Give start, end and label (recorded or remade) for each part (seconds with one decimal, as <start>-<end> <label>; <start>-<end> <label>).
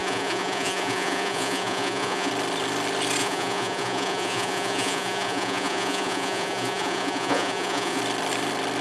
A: 0.0-2.3 remade; 2.3-3.2 recorded; 3.2-8.0 remade; 8.0-8.8 recorded